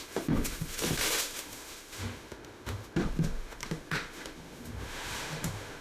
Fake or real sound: fake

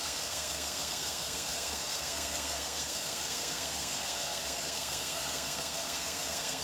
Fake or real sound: fake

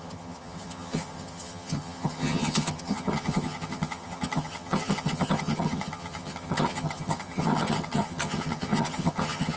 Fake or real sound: fake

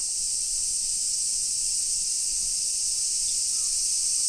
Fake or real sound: real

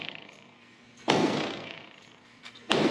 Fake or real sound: fake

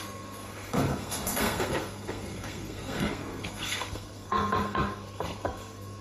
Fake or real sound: fake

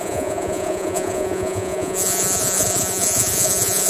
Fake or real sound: fake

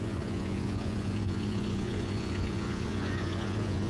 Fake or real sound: fake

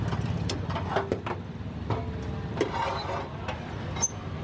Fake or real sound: real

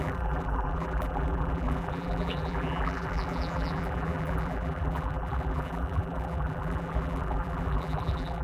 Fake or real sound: fake